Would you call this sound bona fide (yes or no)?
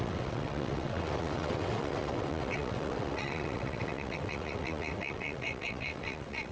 no